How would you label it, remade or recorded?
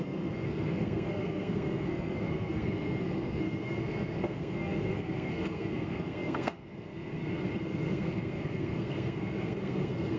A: remade